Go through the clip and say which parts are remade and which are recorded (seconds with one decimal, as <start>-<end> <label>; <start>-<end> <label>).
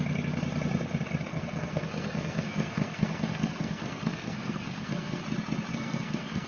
0.0-1.3 recorded; 1.3-5.2 remade; 5.2-5.7 recorded; 5.7-6.5 remade